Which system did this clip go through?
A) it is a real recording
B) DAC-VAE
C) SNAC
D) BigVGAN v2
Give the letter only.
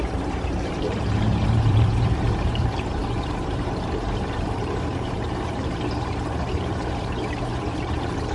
D